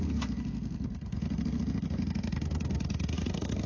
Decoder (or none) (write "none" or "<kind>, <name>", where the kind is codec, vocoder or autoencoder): codec, SNAC